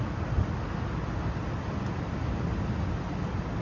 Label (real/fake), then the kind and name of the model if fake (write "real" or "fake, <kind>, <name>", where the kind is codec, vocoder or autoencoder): real